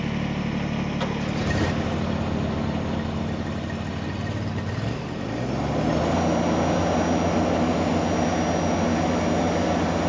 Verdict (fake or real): real